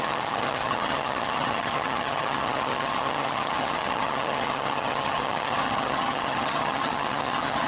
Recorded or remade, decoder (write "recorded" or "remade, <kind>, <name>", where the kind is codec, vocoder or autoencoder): remade, vocoder, HiFi-GAN